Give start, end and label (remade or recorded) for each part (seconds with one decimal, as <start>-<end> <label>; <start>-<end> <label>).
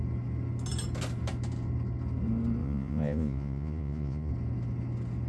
0.0-2.6 recorded; 2.6-4.3 remade; 4.3-5.3 recorded